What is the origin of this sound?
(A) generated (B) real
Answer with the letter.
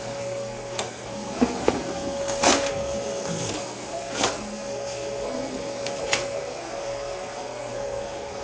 A